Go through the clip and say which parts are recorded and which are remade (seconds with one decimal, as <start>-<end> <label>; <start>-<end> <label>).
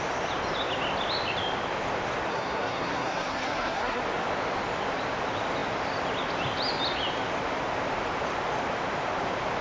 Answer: 0.0-2.3 recorded; 2.3-4.0 remade; 4.0-9.6 recorded